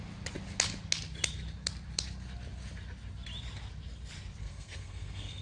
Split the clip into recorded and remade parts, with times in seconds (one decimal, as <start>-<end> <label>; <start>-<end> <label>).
0.0-4.4 recorded; 4.4-5.4 remade

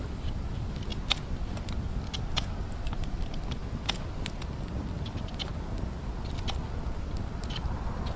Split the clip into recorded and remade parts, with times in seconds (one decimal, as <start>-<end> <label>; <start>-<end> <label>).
0.0-8.2 recorded

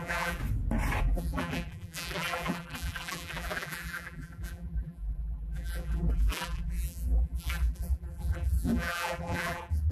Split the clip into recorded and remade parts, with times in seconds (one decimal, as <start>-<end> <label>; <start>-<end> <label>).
0.0-0.4 remade; 0.4-1.0 recorded; 1.0-9.9 remade